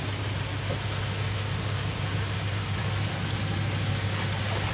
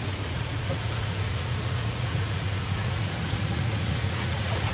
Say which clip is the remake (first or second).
second